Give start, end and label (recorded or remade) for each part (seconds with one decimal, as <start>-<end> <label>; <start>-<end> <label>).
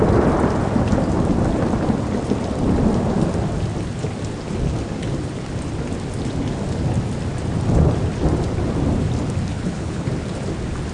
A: 0.0-9.5 recorded; 9.5-10.1 remade; 10.1-10.9 recorded